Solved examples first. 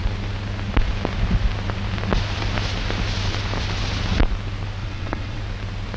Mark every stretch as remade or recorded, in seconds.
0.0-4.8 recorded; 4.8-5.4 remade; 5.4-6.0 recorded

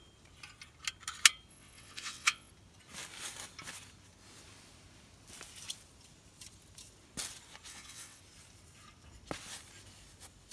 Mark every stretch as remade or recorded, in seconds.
0.0-1.5 recorded; 1.5-2.5 remade; 2.5-7.7 recorded; 7.7-8.2 remade; 8.2-10.5 recorded